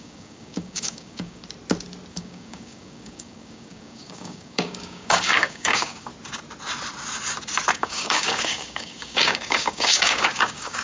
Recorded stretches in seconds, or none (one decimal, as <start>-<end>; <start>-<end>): 1.4-2.1; 6.1-7.7